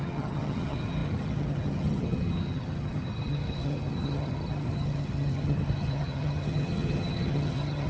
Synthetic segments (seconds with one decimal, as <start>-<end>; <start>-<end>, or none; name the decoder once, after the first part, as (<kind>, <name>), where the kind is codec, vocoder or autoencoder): 0.0-7.9 (vocoder, HiFi-GAN)